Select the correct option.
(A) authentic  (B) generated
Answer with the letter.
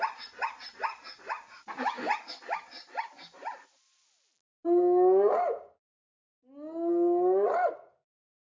A